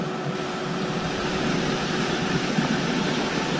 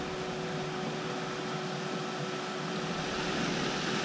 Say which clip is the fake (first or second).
first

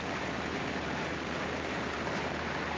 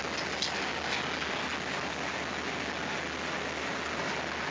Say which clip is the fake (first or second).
first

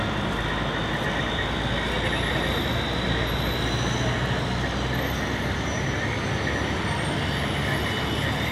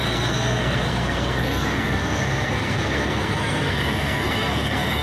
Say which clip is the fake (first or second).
second